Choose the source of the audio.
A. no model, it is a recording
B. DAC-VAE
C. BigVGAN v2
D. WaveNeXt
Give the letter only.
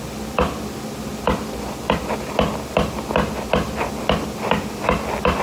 A